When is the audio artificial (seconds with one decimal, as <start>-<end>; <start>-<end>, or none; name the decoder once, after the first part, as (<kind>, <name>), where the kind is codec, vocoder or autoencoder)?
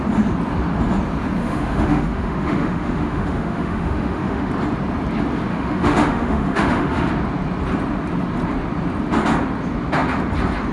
1.4-4.5 (autoencoder, DAC-VAE); 5.5-7.1